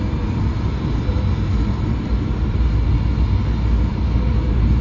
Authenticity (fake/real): real